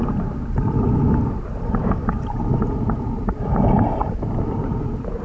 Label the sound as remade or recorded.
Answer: remade